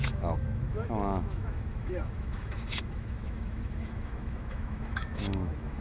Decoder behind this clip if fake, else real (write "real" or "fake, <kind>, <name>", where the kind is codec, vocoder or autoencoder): fake, autoencoder, DAC-VAE